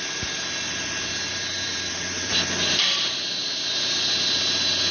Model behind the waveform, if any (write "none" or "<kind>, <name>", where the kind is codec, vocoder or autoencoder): vocoder, BigVGAN v2